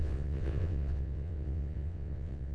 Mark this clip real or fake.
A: fake